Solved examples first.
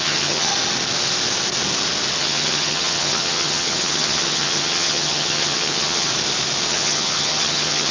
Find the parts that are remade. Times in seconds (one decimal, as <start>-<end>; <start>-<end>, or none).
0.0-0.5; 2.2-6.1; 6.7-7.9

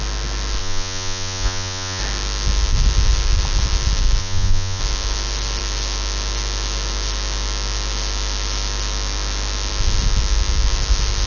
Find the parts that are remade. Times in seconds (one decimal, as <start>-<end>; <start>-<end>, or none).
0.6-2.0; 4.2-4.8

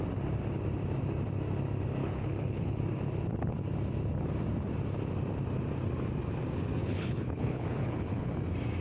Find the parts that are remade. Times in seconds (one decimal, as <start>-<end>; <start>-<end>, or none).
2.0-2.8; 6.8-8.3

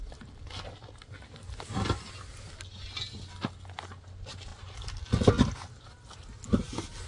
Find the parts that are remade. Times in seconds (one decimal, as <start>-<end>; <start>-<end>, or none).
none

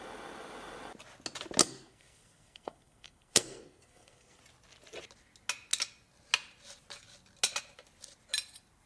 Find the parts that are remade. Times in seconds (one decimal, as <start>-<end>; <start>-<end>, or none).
1.6-4.4